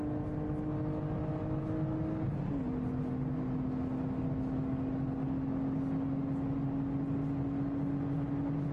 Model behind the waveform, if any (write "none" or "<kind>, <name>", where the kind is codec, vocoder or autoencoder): none